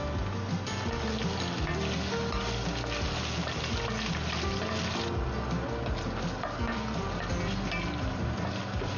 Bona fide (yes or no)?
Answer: yes